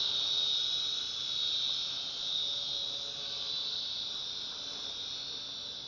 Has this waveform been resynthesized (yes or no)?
no